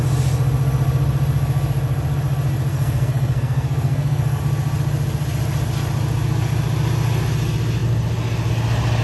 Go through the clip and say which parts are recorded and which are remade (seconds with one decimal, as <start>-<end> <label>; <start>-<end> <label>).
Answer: 0.0-2.7 recorded; 2.7-4.4 remade; 4.4-9.0 recorded